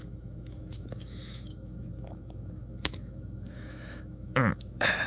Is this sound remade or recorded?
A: remade